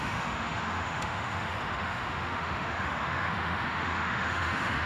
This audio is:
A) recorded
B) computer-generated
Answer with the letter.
B